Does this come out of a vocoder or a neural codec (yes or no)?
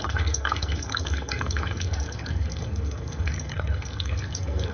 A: yes